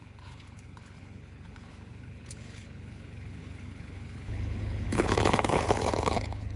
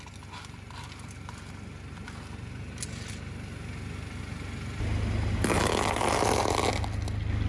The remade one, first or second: first